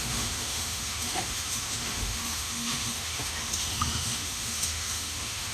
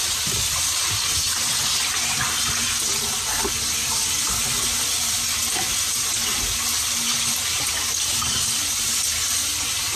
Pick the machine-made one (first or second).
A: first